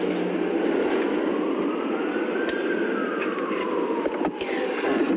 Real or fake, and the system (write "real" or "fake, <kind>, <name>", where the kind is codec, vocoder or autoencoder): real